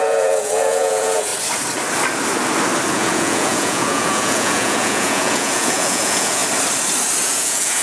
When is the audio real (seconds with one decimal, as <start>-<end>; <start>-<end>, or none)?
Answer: 1.3-2.9; 6.4-7.2